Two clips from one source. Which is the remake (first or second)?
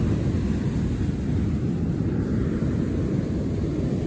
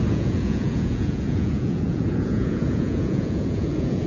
second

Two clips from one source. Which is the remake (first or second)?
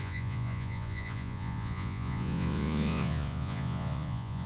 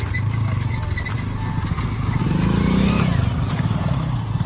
first